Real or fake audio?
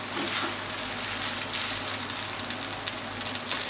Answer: real